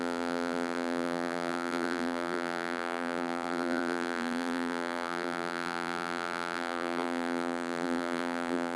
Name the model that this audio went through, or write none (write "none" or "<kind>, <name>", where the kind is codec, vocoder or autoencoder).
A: vocoder, BigVGAN v2